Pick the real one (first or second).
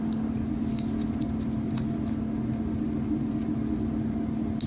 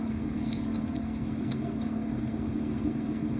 first